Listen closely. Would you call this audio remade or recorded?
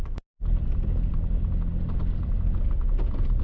recorded